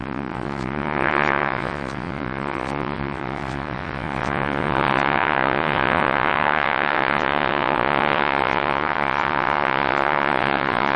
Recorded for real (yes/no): no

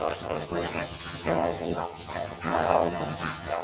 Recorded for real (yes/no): no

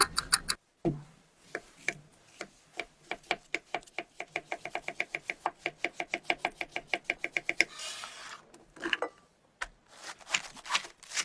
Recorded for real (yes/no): yes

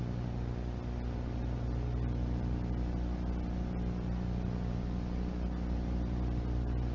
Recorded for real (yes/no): yes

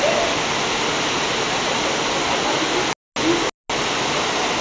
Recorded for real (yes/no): yes